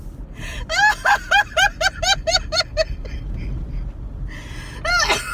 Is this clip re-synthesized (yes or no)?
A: no